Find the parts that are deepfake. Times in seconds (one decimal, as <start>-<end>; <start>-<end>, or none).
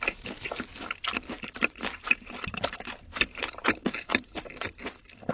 0.0-0.7; 1.3-4.3